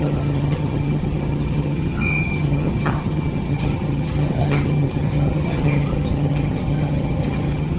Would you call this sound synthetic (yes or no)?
yes